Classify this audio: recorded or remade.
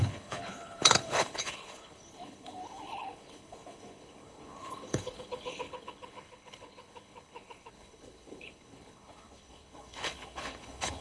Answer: remade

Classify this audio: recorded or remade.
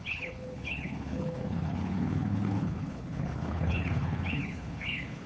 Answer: remade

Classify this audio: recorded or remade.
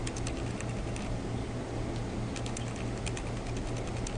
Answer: recorded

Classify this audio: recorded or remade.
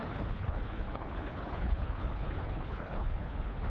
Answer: remade